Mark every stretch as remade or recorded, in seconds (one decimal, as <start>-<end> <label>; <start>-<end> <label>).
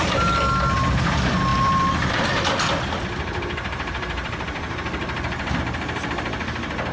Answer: 0.0-1.5 recorded; 1.5-5.6 remade; 5.6-6.9 recorded